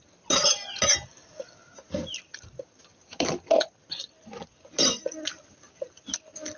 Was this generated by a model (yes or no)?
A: no